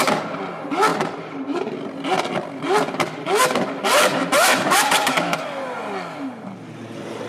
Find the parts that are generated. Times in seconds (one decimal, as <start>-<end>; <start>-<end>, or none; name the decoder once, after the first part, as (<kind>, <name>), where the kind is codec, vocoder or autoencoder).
0.9-1.6 (vocoder, BigVGAN v2); 4.2-5.8